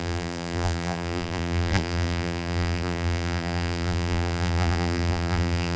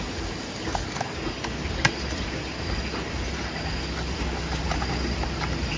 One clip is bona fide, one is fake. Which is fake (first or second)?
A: first